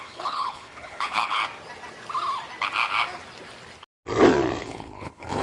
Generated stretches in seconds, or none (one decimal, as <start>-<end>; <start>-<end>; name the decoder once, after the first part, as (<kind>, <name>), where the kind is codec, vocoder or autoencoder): 0.0-1.4 (codec, HILCodec); 4.6-5.4